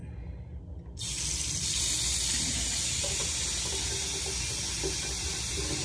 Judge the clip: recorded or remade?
recorded